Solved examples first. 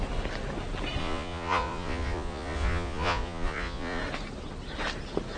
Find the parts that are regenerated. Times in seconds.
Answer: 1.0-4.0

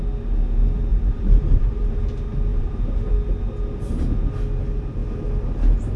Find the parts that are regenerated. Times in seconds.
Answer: 0.9-2.0; 2.5-3.1

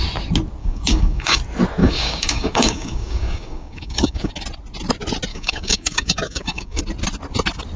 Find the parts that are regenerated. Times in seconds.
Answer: 0.6-1.4; 1.8-4.3; 5.3-6.8

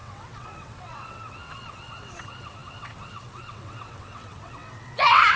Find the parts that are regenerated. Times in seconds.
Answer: 0.0-5.4